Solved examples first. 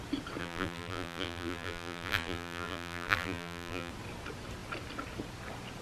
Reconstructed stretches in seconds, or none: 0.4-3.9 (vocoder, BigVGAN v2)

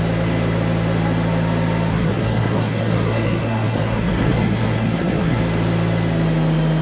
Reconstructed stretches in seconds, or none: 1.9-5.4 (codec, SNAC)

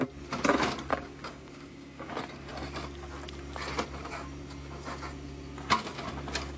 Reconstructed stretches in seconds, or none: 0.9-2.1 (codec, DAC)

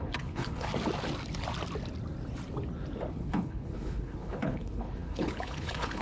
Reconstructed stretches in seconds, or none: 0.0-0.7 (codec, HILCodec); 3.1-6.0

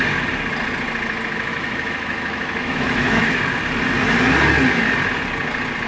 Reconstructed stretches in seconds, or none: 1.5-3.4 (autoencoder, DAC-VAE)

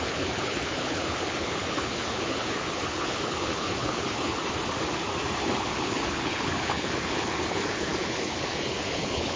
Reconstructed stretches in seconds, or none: 0.0-4.4 (codec, HILCodec); 5.4-9.4

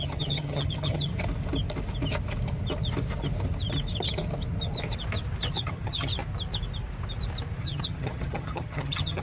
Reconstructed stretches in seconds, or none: 0.0-1.1 (vocoder, HiFi-GAN); 5.5-6.1; 7.6-9.2

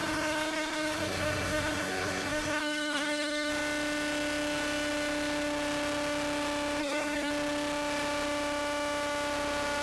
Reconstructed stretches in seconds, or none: 0.0-3.5 (codec, SNAC); 6.8-7.3